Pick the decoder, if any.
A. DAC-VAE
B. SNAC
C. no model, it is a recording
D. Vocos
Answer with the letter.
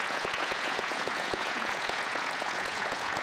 D